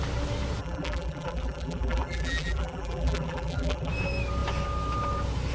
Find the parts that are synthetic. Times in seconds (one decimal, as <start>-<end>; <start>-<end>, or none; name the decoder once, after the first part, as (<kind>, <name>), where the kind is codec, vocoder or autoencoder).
0.6-3.9 (vocoder, BigVGAN v2)